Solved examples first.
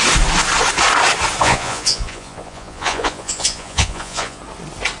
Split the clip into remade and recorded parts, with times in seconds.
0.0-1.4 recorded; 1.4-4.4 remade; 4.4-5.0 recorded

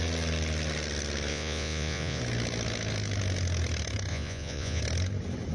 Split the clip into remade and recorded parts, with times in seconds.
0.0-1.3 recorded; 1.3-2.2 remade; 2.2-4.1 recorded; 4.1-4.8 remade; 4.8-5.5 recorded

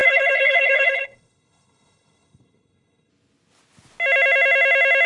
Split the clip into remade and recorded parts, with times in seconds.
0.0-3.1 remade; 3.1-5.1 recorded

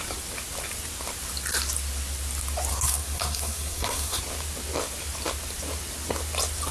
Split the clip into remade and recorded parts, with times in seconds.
0.0-2.7 recorded; 2.7-4.2 remade; 4.2-6.7 recorded

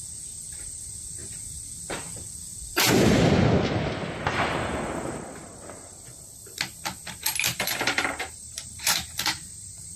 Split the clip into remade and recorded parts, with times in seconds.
0.0-7.5 recorded; 7.5-10.0 remade

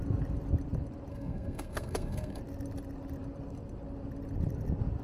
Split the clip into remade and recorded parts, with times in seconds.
0.0-1.1 recorded; 1.1-2.4 remade; 2.4-5.0 recorded

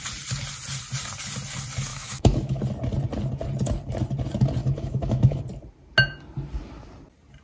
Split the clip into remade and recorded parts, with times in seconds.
0.0-1.9 recorded; 1.9-2.6 remade; 2.6-4.6 recorded; 4.6-5.4 remade; 5.4-7.4 recorded

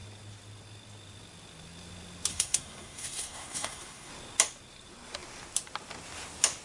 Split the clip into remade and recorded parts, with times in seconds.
0.0-2.3 recorded; 2.3-4.1 remade; 4.1-6.6 recorded